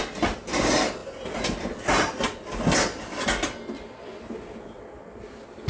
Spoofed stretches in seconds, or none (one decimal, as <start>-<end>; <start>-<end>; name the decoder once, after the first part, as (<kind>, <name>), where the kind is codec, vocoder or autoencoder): none